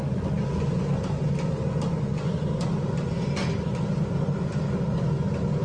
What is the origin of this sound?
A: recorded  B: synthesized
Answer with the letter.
A